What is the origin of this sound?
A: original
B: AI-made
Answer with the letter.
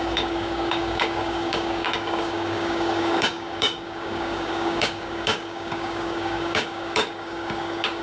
B